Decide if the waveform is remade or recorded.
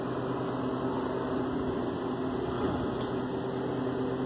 recorded